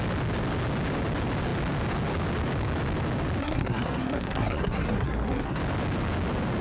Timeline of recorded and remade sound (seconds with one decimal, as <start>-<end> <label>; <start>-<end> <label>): 0.0-3.4 recorded; 3.4-5.6 remade; 5.6-6.6 recorded